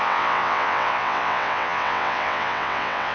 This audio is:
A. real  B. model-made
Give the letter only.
B